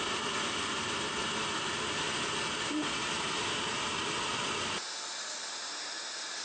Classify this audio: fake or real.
real